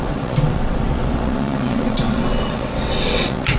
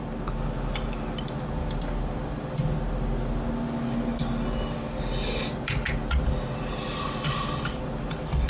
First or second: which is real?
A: second